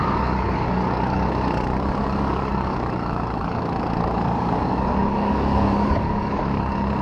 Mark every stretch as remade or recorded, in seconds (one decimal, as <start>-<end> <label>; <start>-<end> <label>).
0.0-7.0 remade